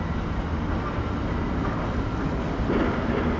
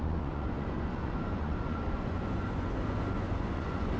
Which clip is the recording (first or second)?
first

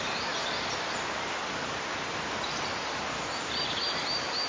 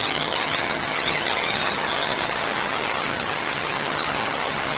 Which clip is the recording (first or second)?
first